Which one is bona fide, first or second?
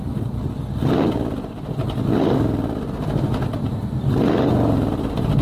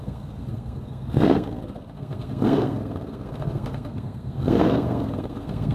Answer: first